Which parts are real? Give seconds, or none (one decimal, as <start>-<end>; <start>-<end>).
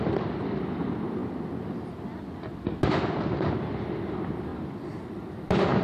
1.2-3.5; 4.5-5.1